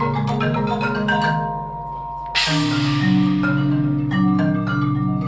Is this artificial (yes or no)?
no